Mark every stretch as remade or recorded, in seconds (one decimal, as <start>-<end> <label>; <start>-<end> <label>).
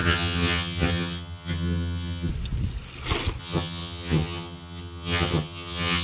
0.0-2.3 remade; 2.3-3.4 recorded; 3.4-6.0 remade